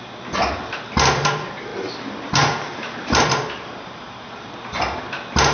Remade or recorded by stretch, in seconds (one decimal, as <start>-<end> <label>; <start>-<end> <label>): 0.0-5.5 recorded